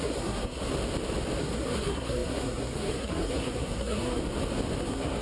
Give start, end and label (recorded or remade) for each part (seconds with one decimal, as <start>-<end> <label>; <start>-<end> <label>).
0.0-0.6 remade; 0.6-1.4 recorded; 1.4-4.2 remade; 4.2-4.8 recorded; 4.8-5.2 remade